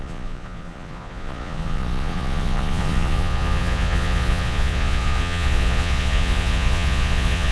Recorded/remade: remade